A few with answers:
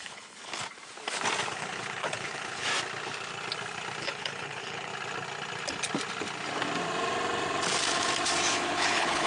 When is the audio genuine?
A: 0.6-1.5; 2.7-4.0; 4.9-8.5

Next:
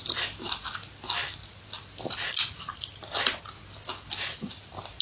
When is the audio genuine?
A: 0.0-5.0

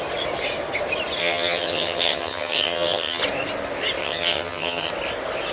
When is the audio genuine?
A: 0.0-1.2; 3.2-4.0; 4.9-5.5

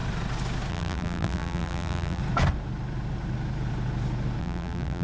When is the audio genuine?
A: 0.0-0.7; 2.2-4.4